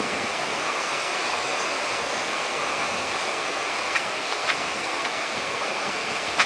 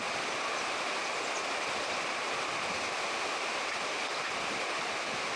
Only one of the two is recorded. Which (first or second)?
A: second